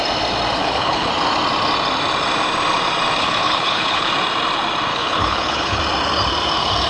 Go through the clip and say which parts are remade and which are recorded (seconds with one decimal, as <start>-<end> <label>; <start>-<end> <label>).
0.0-0.6 recorded; 0.6-1.1 remade; 1.1-3.2 recorded; 3.2-4.1 remade; 4.1-4.9 recorded; 4.9-5.8 remade; 5.8-6.9 recorded